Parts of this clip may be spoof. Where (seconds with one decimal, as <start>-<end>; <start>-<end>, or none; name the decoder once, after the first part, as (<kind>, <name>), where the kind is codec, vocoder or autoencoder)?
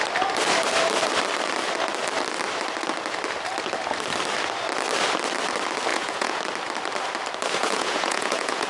5.9-6.4 (vocoder, Vocos); 7.6-8.7